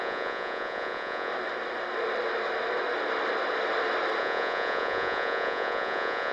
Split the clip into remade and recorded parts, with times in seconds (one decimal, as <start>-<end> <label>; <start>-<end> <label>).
0.0-1.3 remade; 1.3-4.2 recorded; 4.2-6.3 remade